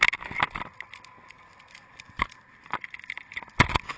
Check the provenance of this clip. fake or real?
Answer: real